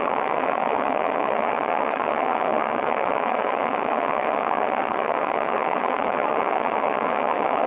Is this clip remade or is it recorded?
remade